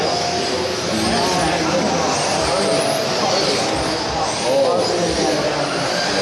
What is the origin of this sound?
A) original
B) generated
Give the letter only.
A